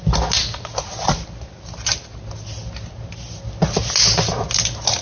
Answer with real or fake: real